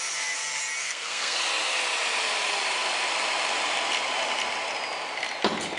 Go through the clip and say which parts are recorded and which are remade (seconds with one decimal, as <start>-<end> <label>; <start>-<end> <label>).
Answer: 0.0-0.8 recorded; 0.8-1.4 remade; 1.4-5.8 recorded